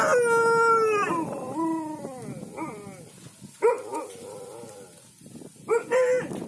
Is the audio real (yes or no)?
yes